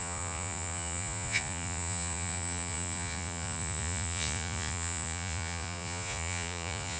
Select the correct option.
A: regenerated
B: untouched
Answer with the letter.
A